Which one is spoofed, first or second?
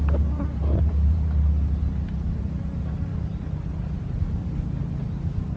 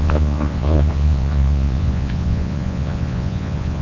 second